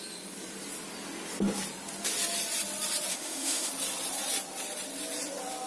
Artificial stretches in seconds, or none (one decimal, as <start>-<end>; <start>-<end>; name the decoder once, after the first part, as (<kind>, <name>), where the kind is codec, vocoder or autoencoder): 3.1-3.7 (autoencoder, DAC-VAE)

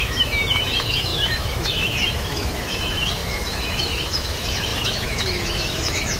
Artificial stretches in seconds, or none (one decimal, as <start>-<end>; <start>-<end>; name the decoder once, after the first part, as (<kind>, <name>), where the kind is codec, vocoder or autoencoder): 0.0-6.2 (autoencoder, DAC-VAE)

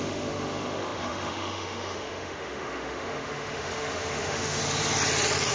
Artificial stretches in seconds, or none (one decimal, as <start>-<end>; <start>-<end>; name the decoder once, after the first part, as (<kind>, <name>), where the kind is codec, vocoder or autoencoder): 0.0-4.6 (autoencoder, DAC-VAE)

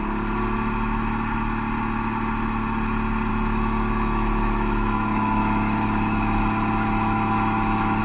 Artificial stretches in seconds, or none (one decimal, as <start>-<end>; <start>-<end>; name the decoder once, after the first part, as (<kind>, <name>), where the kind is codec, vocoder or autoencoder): 3.3-8.0 (autoencoder, DAC-VAE)

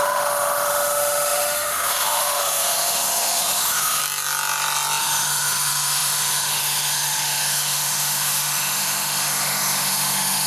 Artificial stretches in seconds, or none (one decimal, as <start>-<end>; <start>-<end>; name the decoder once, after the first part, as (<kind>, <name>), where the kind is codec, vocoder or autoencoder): 0.0-4.0 (autoencoder, DAC-VAE); 5.0-10.5